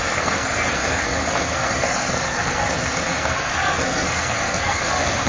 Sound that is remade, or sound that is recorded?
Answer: remade